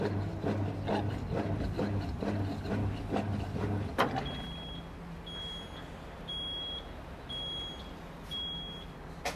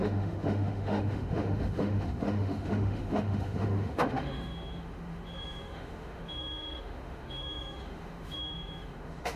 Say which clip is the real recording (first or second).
first